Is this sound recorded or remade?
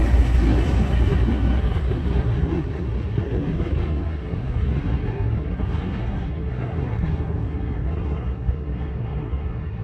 remade